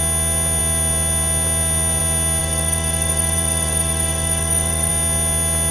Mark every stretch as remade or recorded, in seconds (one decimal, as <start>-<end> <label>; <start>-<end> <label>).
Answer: 0.0-2.4 recorded; 2.4-4.9 remade; 4.9-5.7 recorded